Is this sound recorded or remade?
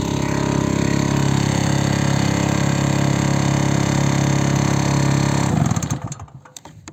recorded